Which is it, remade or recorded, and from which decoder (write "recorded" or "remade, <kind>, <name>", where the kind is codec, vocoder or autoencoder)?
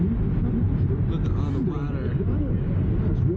recorded